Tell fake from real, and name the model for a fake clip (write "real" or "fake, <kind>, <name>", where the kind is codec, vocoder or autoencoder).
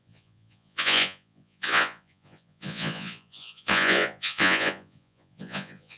fake, vocoder, Vocos